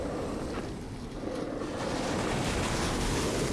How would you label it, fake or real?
real